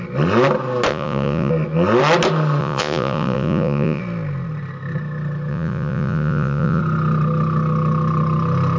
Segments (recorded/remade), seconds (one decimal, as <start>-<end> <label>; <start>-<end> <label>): 0.0-0.9 recorded; 0.9-1.5 remade; 1.5-2.6 recorded; 2.6-4.0 remade; 4.0-5.5 recorded; 5.5-6.8 remade; 6.8-8.8 recorded